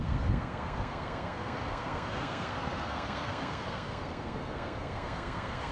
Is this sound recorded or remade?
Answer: remade